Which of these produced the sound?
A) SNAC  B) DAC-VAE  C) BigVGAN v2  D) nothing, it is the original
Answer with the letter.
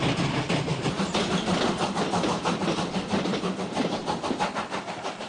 C